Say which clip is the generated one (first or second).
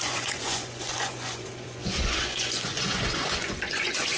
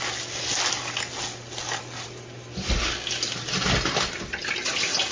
first